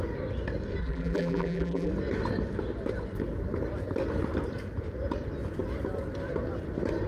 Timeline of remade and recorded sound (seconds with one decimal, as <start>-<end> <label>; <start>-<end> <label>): 0.0-0.8 recorded; 0.8-1.9 remade; 1.9-7.1 recorded